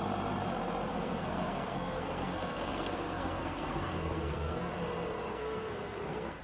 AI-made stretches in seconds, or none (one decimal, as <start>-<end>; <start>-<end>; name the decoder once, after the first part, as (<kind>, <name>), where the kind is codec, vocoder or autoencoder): 0.9-4.7 (codec, SNAC); 5.3-6.4

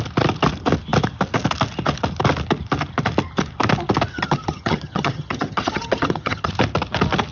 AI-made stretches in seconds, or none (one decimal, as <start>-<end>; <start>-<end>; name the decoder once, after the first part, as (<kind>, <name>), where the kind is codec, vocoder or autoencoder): 4.1-6.5 (vocoder, HiFi-GAN)